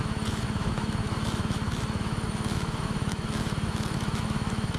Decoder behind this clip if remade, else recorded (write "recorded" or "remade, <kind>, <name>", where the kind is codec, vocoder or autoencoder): remade, autoencoder, DAC-VAE